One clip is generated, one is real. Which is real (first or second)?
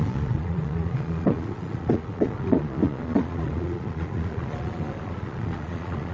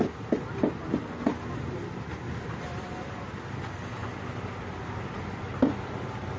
second